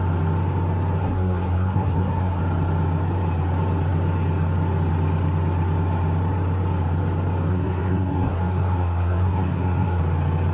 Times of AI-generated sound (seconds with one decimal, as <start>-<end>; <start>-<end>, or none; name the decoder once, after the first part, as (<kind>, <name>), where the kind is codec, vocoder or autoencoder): 1.0-2.4 (codec, SNAC); 7.5-10.0